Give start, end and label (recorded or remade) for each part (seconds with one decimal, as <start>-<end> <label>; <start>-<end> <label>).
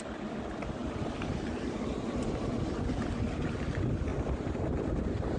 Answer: 0.0-5.4 recorded